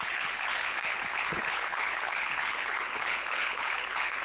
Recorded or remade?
remade